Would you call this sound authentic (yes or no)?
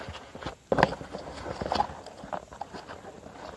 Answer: yes